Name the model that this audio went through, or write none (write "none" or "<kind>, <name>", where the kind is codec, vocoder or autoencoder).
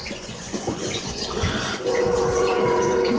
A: vocoder, Vocos